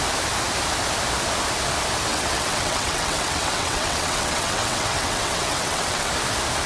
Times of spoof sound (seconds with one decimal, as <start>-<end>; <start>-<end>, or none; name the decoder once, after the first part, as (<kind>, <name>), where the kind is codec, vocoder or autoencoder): 2.1-6.1 (vocoder, WaveNeXt)